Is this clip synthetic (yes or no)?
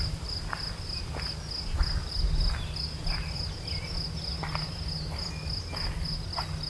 no